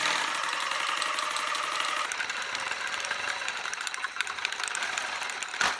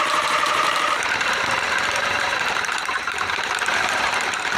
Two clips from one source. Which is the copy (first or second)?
second